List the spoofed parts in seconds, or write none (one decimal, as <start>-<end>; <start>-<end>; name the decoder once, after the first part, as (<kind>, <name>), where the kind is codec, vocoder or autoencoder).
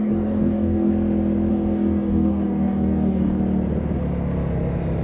0.0-0.9 (codec, DAC); 1.5-3.4